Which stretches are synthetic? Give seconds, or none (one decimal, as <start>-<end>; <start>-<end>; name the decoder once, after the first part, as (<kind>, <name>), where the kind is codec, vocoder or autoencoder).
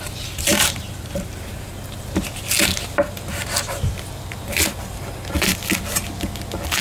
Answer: 0.5-1.7 (vocoder, BigVGAN v2)